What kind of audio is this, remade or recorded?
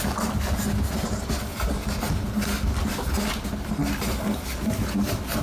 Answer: recorded